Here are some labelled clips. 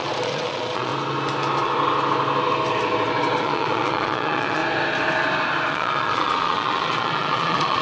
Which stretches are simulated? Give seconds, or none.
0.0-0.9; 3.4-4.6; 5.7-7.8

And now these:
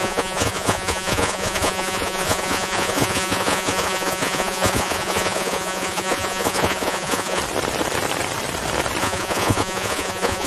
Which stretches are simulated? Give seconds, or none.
0.0-7.4; 9.0-10.5

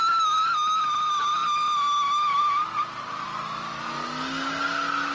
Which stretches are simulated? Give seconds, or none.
none

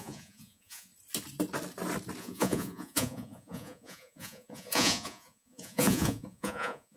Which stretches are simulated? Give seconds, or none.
0.0-0.9; 2.2-7.0

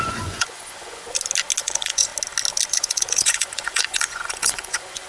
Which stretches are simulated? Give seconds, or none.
0.0-1.0; 1.6-2.1; 2.7-5.1

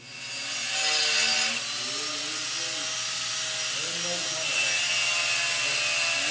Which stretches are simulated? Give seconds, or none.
none